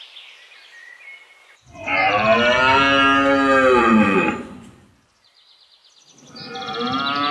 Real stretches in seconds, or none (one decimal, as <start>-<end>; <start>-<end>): 0.0-1.4; 2.1-3.8; 5.3-7.3